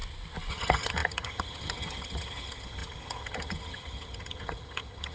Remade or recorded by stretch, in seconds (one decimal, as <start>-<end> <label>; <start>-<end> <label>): 0.0-0.5 recorded; 0.5-5.1 remade